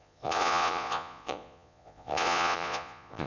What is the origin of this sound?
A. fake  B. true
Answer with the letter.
A